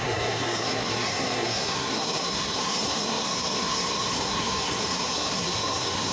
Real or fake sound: fake